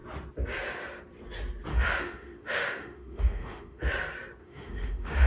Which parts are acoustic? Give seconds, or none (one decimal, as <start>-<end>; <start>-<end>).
0.0-1.7; 3.9-4.4